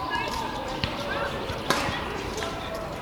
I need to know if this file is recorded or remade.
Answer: remade